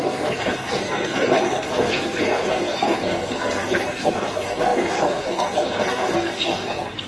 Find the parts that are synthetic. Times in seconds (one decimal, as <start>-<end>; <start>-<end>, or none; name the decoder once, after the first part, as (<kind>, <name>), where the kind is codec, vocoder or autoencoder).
0.0-7.1 (codec, SNAC)